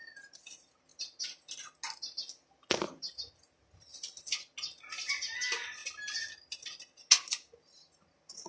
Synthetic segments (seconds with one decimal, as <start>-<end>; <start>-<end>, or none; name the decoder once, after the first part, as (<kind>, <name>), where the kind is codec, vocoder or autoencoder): none